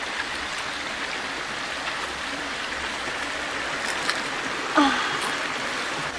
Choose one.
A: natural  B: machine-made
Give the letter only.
A